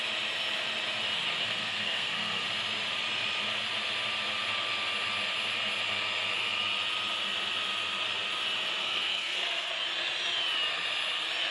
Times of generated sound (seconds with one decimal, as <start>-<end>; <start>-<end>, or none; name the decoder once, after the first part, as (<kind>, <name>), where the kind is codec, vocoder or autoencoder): 1.4-2.4 (codec, SNAC); 8.8-9.7